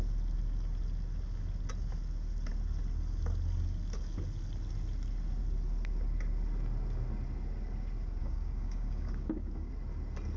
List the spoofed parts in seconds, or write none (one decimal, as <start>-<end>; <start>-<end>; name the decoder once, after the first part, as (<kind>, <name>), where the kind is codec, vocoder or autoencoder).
8.2-9.7 (codec, DAC)